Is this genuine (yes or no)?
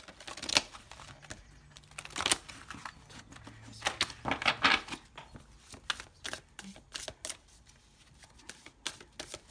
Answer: yes